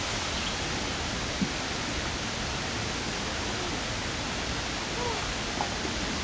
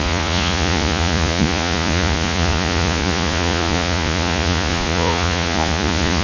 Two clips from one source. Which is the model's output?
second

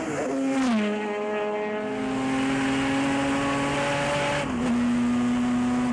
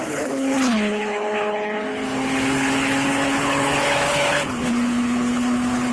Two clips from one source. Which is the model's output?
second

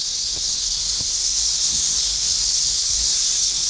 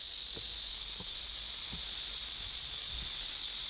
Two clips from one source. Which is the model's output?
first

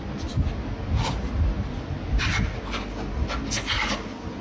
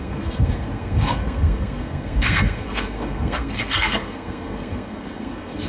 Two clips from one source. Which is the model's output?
second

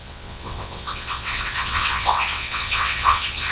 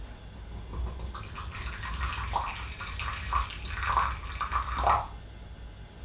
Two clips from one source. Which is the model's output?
first